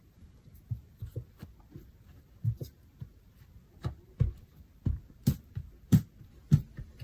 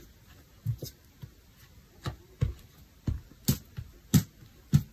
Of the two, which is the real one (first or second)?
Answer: second